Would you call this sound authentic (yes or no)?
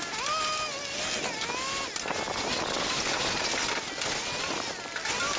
yes